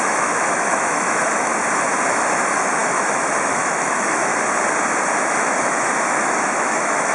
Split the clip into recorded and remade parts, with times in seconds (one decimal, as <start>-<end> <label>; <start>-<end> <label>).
0.0-1.5 remade; 1.5-2.1 recorded; 2.1-4.3 remade; 4.3-5.3 recorded; 5.3-7.1 remade